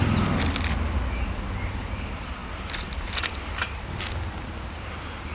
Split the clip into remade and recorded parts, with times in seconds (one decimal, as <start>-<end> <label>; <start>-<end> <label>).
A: 0.0-5.3 recorded